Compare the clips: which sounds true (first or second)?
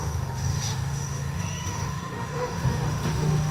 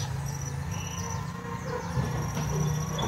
second